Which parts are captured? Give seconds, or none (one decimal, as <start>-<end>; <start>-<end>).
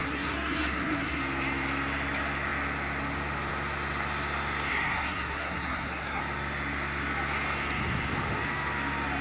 1.2-4.7; 6.2-9.2